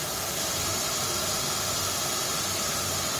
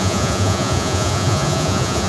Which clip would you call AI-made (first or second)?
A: second